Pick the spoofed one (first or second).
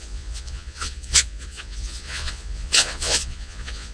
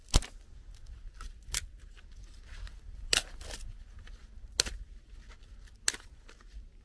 first